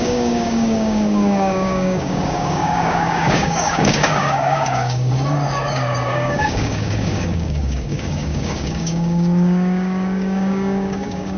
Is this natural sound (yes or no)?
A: no